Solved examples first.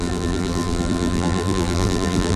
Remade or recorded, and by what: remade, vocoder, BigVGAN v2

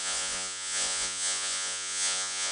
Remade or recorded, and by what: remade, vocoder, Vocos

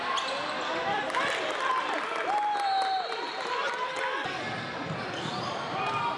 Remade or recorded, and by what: recorded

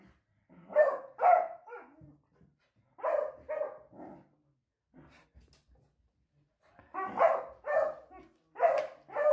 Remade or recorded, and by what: recorded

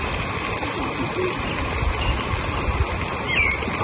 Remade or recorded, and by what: recorded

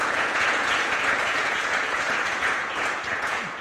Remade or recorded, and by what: remade, vocoder, Vocos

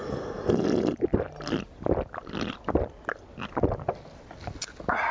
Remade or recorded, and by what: recorded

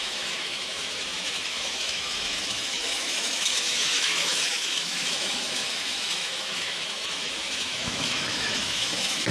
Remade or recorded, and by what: remade, autoencoder, DAC-VAE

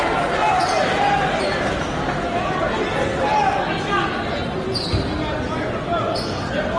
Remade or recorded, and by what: recorded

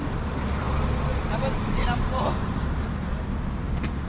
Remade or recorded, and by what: remade, vocoder, BigVGAN v2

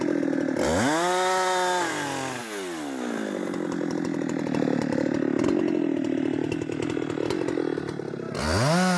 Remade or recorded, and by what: recorded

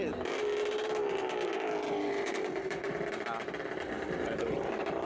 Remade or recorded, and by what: recorded